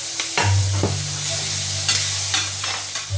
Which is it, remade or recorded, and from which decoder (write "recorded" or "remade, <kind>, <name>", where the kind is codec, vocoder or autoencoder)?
recorded